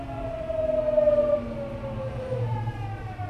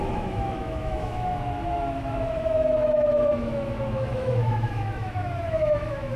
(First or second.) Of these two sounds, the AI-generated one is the second